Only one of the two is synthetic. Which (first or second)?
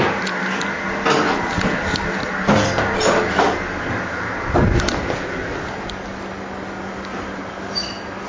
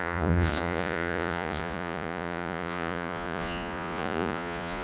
second